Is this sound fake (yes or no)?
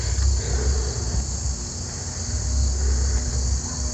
no